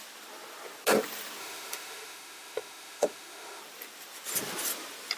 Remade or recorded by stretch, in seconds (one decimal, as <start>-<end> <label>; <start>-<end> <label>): 0.0-1.4 recorded; 1.4-3.6 remade; 3.6-5.2 recorded